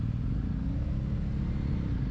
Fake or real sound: real